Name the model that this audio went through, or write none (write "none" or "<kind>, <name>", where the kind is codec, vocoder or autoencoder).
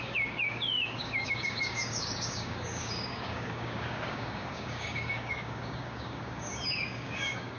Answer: codec, DAC